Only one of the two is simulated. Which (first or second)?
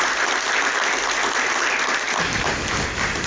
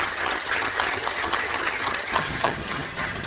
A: second